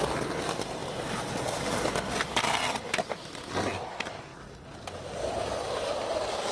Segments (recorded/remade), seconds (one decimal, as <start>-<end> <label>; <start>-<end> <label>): 0.0-6.5 recorded